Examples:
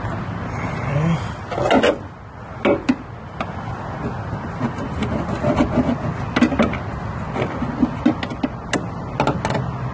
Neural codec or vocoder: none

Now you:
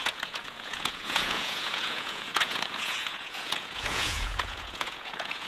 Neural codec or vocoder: vocoder, Vocos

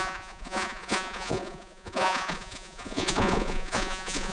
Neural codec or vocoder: vocoder, Vocos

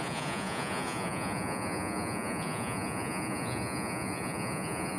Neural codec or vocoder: vocoder, Vocos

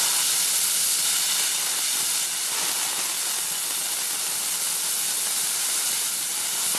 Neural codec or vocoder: none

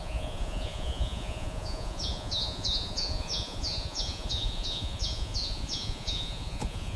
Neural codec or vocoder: vocoder, Vocos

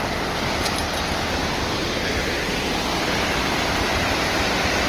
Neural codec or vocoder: none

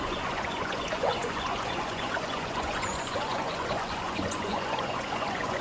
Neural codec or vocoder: vocoder, Vocos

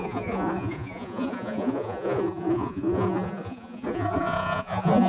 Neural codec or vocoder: vocoder, Vocos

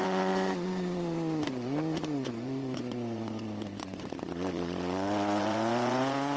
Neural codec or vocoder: vocoder, Vocos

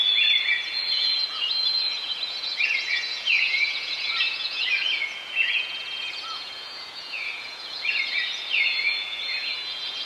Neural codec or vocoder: vocoder, Vocos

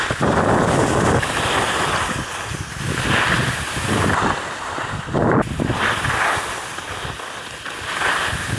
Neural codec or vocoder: none